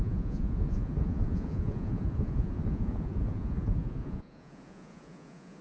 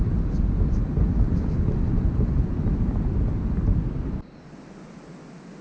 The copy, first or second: first